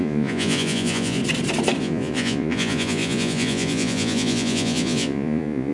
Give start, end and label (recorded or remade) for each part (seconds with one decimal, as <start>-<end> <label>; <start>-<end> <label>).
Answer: 0.0-1.2 remade; 1.2-1.8 recorded; 1.8-5.7 remade